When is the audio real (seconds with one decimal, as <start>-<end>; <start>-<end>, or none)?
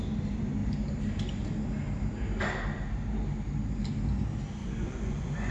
0.0-4.6